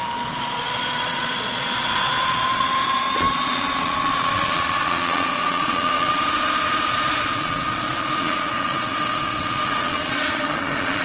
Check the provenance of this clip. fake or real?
fake